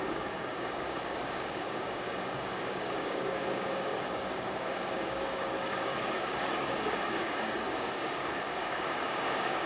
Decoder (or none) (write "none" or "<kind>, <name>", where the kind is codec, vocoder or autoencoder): codec, DAC